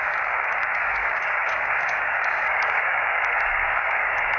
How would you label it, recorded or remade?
remade